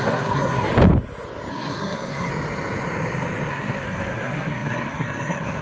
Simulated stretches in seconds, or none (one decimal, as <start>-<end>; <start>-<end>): 0.0-0.7; 1.5-2.3; 3.5-5.6